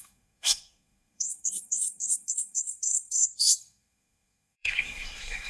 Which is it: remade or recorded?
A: remade